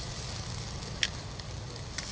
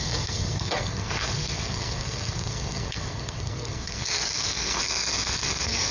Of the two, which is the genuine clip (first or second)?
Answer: first